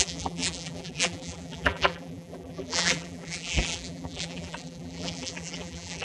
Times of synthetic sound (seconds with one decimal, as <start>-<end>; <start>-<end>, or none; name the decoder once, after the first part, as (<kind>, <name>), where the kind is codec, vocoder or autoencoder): 0.0-6.0 (vocoder, BigVGAN v2)